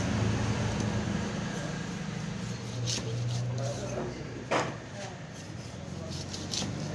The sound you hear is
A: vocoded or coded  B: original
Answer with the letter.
B